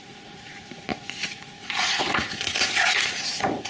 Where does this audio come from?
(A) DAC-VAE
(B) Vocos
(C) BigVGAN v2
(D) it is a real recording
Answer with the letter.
B